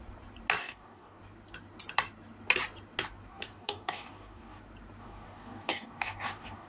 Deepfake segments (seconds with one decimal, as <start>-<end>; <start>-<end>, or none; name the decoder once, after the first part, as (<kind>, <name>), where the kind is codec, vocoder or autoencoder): 0.6-1.2 (codec, DAC); 3.3-4.6; 5.0-6.7